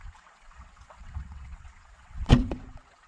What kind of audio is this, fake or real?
fake